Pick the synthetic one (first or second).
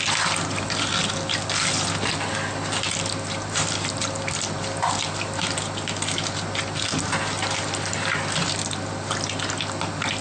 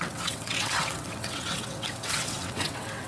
second